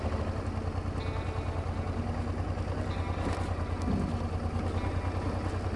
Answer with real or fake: real